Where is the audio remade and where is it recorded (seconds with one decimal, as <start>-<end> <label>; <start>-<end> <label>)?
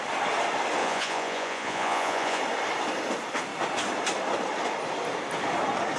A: 0.0-0.8 recorded; 0.8-2.4 remade; 2.4-6.0 recorded